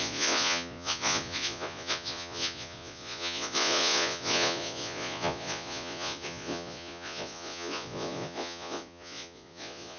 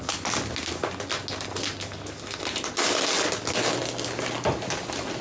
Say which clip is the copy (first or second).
first